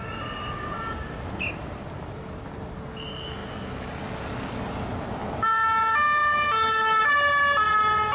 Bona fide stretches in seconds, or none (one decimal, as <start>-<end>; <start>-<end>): 0.0-8.1